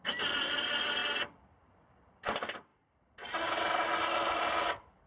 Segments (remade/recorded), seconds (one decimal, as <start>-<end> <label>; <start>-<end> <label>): 0.0-5.1 recorded